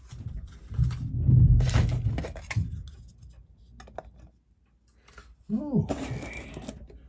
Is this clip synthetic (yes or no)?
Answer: no